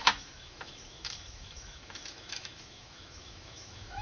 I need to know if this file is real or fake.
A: fake